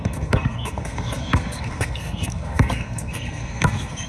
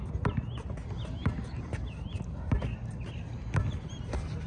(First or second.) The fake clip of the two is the first